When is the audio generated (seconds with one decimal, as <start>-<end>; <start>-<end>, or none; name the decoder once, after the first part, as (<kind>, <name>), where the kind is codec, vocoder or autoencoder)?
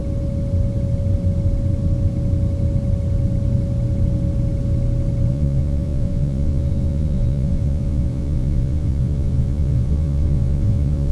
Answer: 5.3-11.1 (vocoder, Vocos)